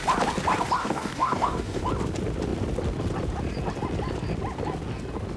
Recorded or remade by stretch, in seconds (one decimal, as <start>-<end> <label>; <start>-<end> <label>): 0.0-0.8 recorded; 0.8-1.8 remade; 1.8-5.4 recorded